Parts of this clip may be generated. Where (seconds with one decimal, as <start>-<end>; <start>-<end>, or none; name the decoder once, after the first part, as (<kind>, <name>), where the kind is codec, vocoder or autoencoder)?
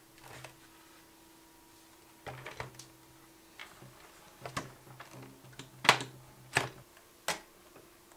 none